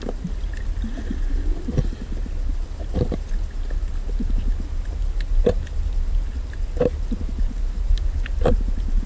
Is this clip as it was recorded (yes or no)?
yes